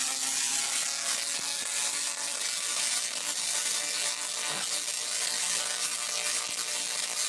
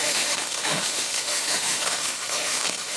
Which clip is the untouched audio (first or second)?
first